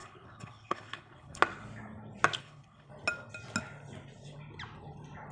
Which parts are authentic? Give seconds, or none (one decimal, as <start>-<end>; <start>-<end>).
1.4-2.4; 2.9-5.3